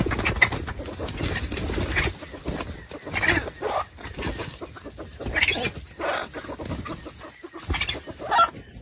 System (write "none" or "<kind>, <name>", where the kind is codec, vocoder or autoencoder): none